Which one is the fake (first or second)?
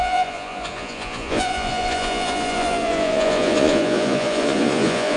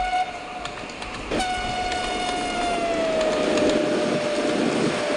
first